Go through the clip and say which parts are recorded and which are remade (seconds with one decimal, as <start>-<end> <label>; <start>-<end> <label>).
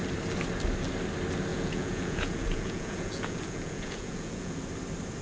0.0-1.5 recorded; 1.5-4.6 remade; 4.6-5.2 recorded